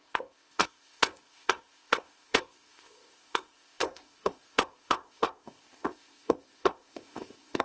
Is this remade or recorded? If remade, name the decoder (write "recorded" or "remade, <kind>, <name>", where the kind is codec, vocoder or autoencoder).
remade, codec, ZipCodec